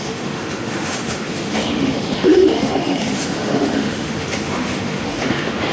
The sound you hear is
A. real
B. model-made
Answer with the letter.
B